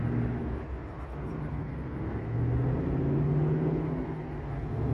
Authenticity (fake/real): real